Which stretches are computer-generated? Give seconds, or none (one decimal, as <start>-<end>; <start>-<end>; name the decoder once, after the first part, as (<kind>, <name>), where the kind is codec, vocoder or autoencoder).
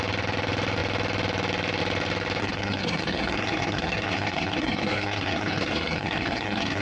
2.4-6.8 (codec, SNAC)